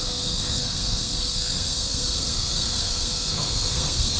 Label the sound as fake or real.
fake